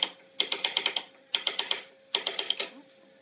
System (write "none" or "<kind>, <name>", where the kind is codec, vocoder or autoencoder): none